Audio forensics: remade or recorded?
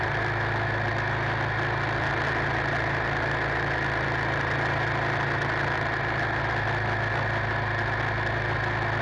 recorded